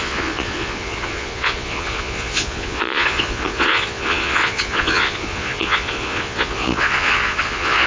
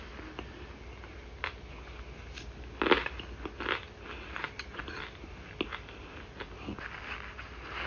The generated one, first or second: first